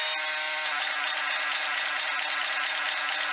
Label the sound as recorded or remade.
recorded